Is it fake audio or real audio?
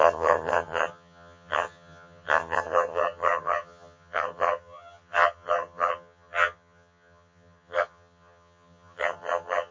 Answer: fake